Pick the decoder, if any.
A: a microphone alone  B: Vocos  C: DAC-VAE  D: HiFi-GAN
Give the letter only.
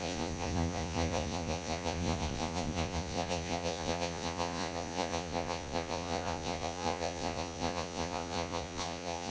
B